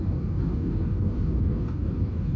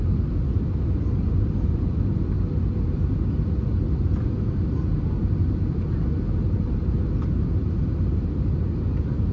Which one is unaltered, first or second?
second